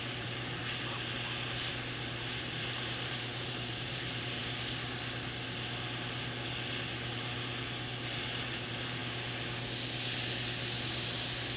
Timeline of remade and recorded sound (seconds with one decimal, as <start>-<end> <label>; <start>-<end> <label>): 0.0-0.6 remade; 0.6-2.5 recorded; 2.5-4.4 remade; 4.4-7.1 recorded; 7.1-9.0 remade; 9.0-11.0 recorded; 11.0-11.6 remade